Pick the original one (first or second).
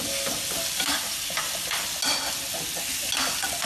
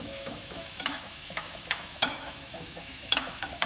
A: first